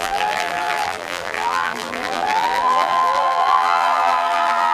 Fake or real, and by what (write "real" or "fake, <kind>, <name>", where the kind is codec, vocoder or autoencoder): fake, vocoder, BigVGAN v2